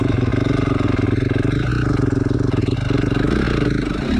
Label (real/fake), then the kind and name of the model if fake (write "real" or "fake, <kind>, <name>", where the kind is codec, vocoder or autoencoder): real